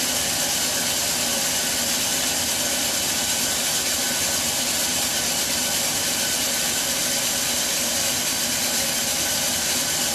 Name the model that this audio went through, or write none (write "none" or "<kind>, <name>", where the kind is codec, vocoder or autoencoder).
none